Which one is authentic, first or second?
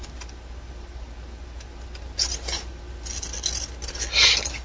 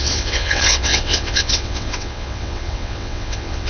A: first